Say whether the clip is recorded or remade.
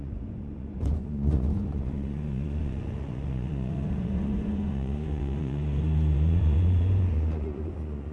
remade